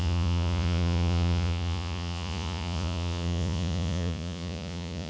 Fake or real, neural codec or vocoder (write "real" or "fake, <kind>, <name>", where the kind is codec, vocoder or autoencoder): fake, vocoder, Vocos